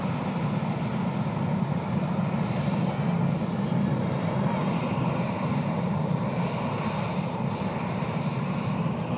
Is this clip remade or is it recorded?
recorded